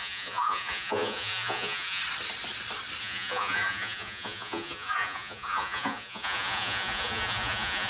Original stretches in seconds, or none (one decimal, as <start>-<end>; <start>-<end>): 2.0-3.0